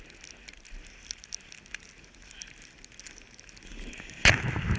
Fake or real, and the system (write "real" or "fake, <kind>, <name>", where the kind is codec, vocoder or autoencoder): real